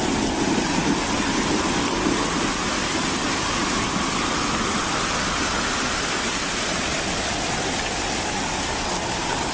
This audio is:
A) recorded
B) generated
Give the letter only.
A